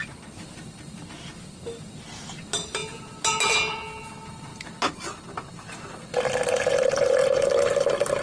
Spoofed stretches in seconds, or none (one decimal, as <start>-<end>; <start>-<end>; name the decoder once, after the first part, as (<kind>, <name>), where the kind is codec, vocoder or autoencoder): none